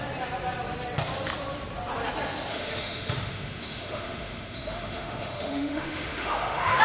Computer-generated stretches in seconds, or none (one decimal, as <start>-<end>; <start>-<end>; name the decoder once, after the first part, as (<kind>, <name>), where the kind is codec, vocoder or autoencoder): 2.5-6.8 (autoencoder, DAC-VAE)